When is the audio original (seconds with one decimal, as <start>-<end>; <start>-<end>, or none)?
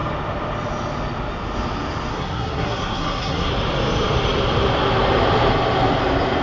0.0-2.1; 3.5-6.4